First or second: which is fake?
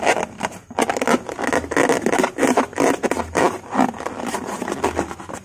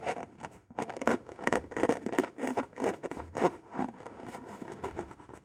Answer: second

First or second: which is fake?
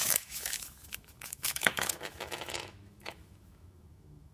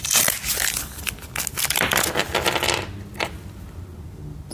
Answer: first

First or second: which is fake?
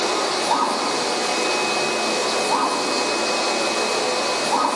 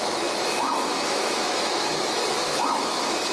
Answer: second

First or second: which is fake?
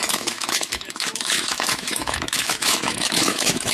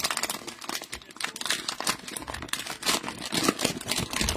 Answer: first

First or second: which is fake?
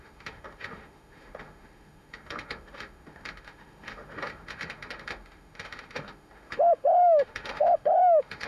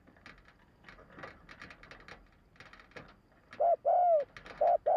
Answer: first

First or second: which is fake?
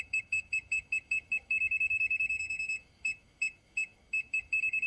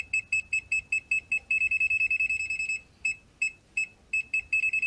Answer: first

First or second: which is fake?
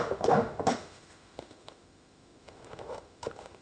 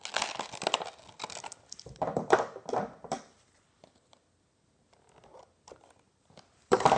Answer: first